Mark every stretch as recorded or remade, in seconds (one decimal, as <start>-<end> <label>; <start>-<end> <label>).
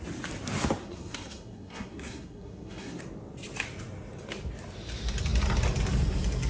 0.0-0.8 recorded; 0.8-3.0 remade; 3.0-6.5 recorded